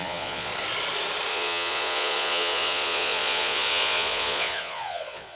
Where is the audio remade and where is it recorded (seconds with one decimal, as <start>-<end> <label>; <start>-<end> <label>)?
0.0-0.5 remade; 0.5-1.3 recorded; 1.3-5.4 remade